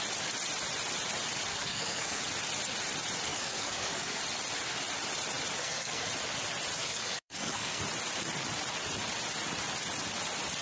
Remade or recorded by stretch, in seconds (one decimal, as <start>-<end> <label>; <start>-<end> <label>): 0.0-1.5 recorded; 1.5-2.2 remade; 2.2-3.3 recorded; 3.3-4.2 remade; 4.2-5.6 recorded; 5.6-6.1 remade; 6.1-6.8 recorded; 6.8-7.8 remade; 7.8-10.6 recorded